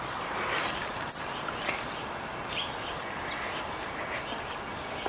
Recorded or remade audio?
recorded